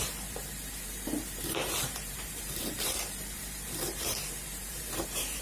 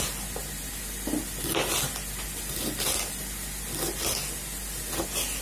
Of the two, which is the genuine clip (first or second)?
second